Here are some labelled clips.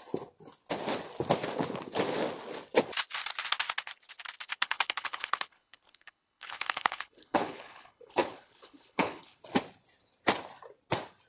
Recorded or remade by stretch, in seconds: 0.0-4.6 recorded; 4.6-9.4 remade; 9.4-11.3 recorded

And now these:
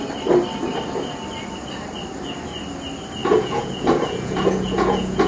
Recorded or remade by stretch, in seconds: 0.0-3.2 recorded; 3.2-5.3 remade

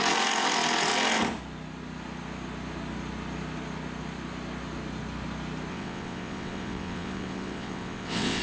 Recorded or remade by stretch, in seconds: 0.0-5.7 recorded; 5.7-8.4 remade

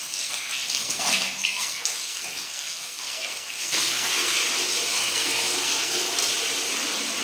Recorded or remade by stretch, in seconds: 0.0-4.4 remade; 4.4-4.9 recorded; 4.9-6.2 remade; 6.2-7.2 recorded

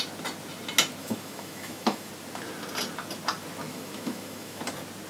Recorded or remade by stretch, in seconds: 0.0-1.0 recorded; 1.0-2.1 remade; 2.1-3.7 recorded; 3.7-4.6 remade; 4.6-5.1 recorded